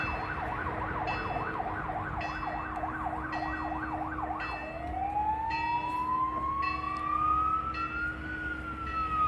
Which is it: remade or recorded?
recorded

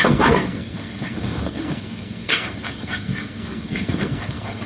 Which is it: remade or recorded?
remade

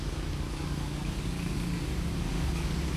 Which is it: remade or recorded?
remade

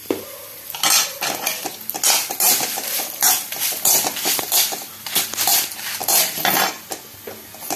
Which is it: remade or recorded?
recorded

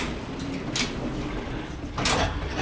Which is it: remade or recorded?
recorded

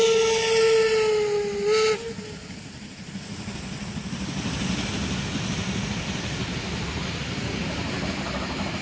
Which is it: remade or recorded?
recorded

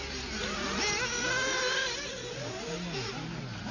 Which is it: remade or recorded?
recorded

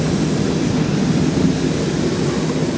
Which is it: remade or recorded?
recorded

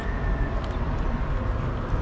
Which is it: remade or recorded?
recorded